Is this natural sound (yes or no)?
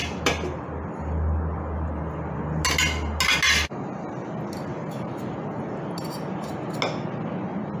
yes